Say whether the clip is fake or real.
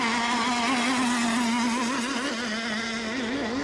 real